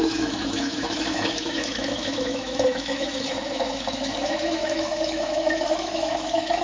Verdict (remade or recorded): remade